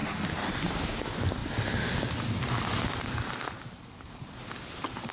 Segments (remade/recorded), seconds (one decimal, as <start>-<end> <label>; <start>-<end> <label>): 0.0-0.7 recorded; 0.7-5.1 remade